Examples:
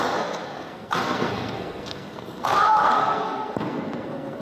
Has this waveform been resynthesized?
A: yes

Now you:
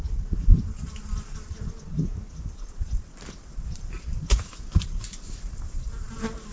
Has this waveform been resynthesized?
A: no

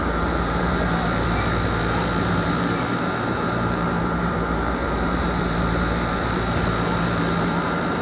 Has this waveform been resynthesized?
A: yes